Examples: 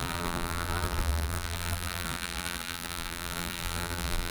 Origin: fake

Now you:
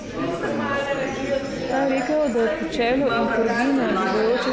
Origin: real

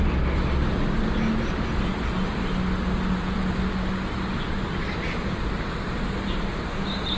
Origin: real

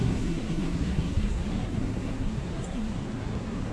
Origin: fake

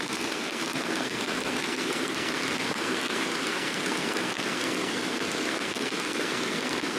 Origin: fake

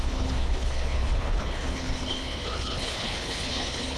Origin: fake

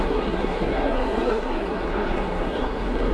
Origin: fake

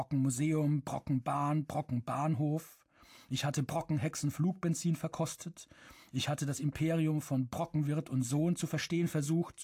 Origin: real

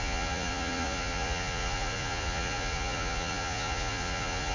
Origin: fake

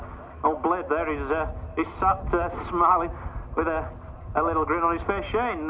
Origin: real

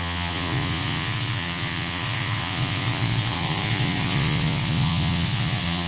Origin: fake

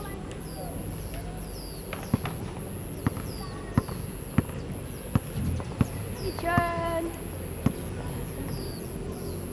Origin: real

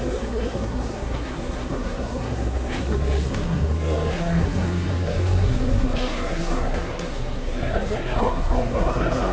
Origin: fake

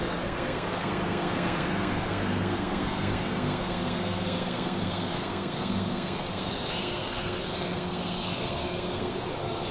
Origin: fake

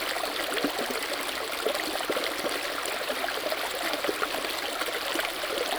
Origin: real